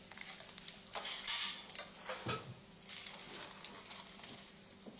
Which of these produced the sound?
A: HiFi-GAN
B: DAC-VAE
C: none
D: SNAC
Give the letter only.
C